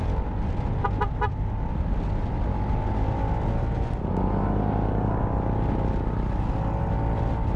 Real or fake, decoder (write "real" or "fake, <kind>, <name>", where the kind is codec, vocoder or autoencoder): real